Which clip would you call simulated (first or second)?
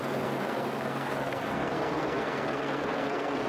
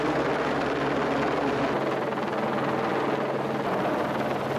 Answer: first